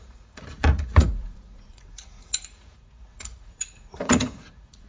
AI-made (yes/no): yes